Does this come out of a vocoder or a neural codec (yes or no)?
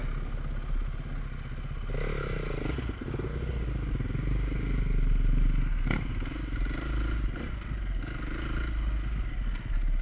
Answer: no